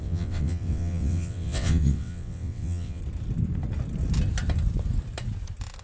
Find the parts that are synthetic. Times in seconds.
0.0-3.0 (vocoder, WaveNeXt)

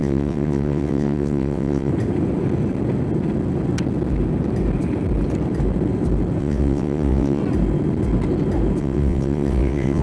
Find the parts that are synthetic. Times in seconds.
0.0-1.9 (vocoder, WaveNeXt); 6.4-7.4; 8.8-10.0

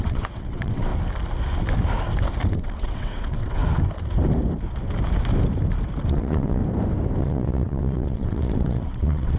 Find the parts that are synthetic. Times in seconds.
0.0-0.9 (vocoder, WaveNeXt); 2.5-3.6; 6.1-6.6; 7.2-9.4